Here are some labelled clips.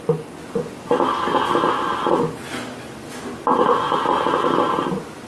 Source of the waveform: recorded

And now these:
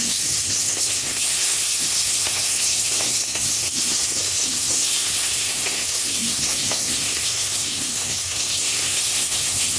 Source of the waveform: remade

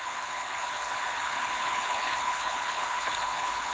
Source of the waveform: remade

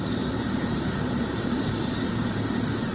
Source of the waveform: recorded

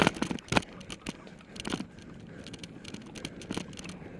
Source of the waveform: recorded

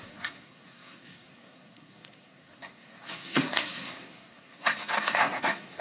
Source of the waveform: remade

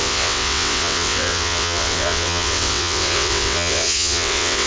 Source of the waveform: remade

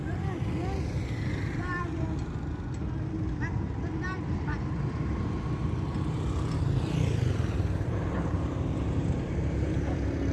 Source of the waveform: recorded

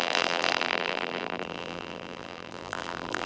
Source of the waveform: remade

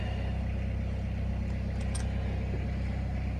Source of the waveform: recorded